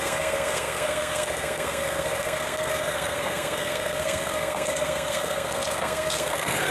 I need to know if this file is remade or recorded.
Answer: remade